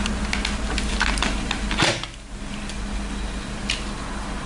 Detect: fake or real real